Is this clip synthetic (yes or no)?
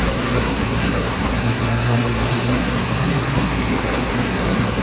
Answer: yes